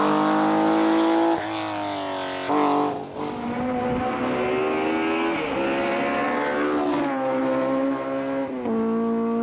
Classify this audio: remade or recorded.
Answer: recorded